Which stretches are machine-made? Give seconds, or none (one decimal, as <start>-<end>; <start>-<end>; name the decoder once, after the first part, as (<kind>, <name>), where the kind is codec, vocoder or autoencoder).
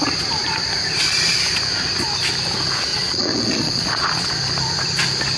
2.9-4.3 (vocoder, Vocos)